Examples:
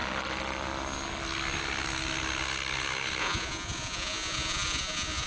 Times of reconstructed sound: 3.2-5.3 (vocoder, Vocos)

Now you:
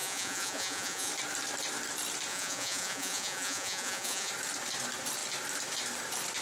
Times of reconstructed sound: 0.0-1.1 (vocoder, Vocos); 2.3-4.3

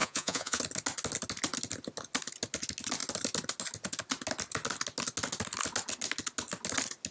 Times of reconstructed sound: 0.0-0.6 (vocoder, Vocos)

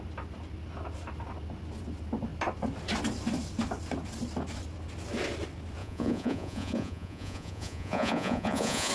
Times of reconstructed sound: 5.8-8.9 (vocoder, Vocos)

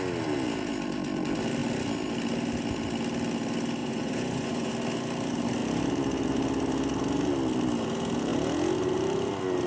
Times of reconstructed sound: 3.8-4.7 (vocoder, Vocos)

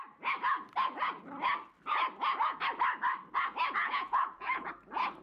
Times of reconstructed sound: 3.8-4.7 (vocoder, Vocos)